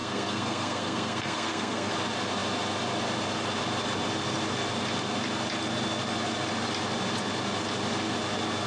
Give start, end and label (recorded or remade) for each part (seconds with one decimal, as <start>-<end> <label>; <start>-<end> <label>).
0.0-1.9 remade; 1.9-8.7 recorded